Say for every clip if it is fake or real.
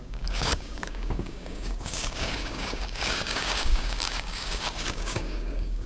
fake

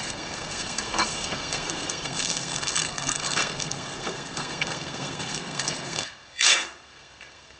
fake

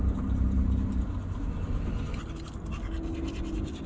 real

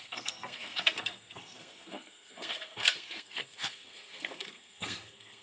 fake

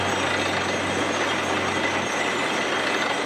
real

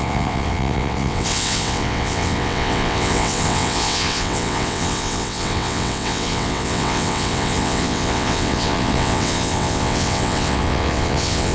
fake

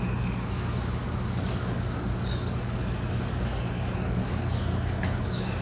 fake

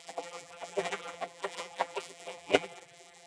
fake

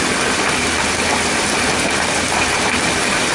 real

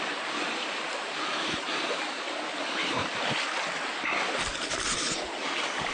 real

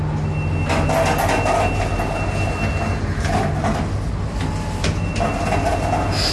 real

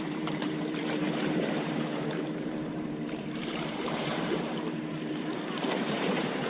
fake